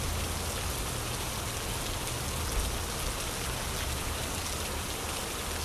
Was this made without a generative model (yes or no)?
yes